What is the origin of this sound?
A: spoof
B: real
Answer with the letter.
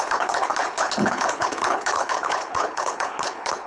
A